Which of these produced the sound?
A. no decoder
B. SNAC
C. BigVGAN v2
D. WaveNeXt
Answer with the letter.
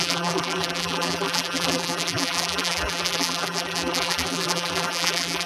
C